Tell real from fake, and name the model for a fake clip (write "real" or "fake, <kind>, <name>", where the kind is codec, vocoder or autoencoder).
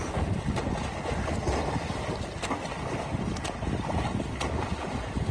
real